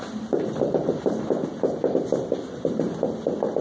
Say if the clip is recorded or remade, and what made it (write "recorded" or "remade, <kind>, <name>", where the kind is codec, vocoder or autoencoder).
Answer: recorded